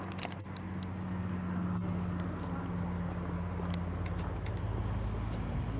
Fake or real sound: real